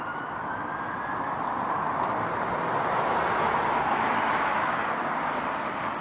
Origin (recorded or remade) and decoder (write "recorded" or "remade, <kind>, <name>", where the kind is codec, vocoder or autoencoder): recorded